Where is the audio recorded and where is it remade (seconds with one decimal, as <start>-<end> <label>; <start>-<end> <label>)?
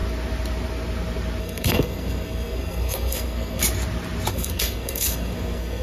0.0-1.4 recorded; 1.4-3.6 remade; 3.6-4.3 recorded; 4.3-5.8 remade